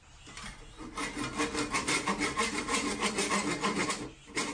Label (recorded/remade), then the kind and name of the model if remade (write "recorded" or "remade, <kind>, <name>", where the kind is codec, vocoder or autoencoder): recorded